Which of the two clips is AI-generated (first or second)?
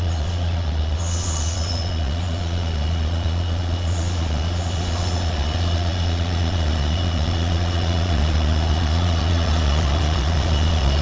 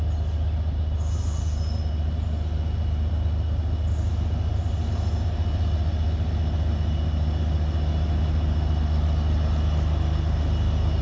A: first